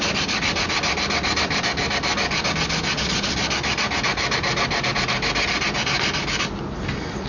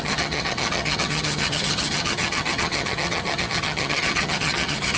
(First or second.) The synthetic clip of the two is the second